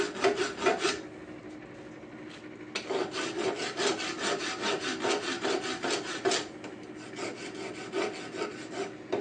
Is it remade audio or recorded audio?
recorded